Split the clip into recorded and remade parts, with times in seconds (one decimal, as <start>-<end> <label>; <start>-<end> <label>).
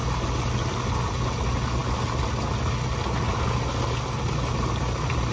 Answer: 0.0-5.3 recorded